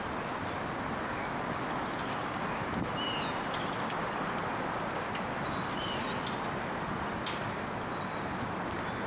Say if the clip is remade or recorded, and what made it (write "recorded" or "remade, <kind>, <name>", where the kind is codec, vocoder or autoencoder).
recorded